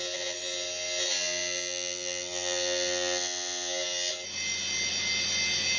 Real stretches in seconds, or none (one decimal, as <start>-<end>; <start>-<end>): 0.0-5.8